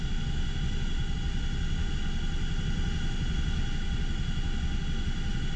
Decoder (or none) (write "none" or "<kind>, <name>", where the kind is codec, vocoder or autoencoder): none